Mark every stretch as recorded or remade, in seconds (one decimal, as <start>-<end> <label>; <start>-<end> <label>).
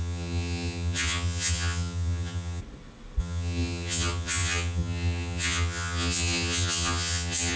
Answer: 0.0-2.6 remade; 2.6-3.2 recorded; 3.2-7.6 remade